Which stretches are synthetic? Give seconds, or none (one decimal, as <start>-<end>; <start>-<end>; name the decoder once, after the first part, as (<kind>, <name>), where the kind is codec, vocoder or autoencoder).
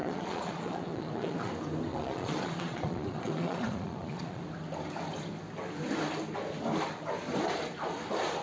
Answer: 0.0-1.5 (vocoder, Vocos); 1.9-4.4